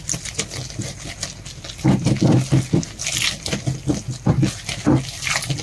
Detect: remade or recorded recorded